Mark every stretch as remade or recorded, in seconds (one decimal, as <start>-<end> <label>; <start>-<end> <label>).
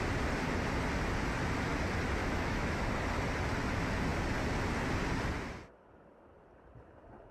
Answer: 0.0-2.2 recorded; 2.2-2.8 remade; 2.8-7.3 recorded